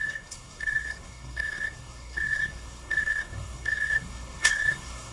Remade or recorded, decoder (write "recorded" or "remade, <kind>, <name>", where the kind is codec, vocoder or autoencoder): remade, codec, SNAC